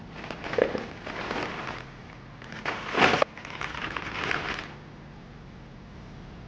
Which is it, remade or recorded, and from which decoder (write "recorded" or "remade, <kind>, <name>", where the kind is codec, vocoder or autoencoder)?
recorded